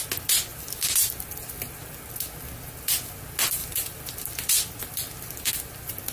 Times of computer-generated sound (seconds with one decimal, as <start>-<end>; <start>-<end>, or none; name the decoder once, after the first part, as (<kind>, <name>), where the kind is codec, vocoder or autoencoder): 0.5-1.2 (vocoder, BigVGAN v2); 3.6-5.5